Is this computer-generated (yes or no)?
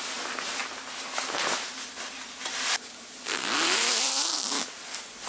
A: no